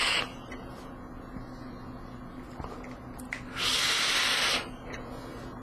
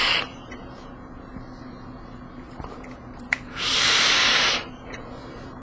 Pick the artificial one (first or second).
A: second